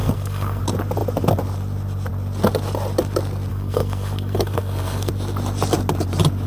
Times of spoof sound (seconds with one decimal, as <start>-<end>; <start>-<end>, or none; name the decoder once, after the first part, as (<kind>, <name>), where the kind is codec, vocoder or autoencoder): 0.0-0.6 (codec, SNAC); 3.5-5.1